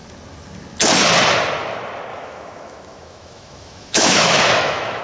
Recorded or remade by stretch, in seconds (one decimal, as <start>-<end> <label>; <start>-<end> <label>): 0.0-2.1 recorded; 2.1-5.0 remade